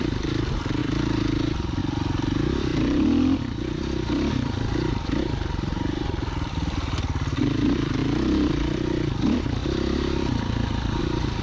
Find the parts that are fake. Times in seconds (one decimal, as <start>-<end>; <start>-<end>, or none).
0.0-8.0; 8.5-11.4